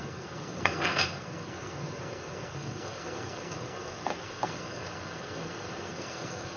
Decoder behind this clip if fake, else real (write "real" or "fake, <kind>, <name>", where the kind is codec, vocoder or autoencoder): fake, codec, SNAC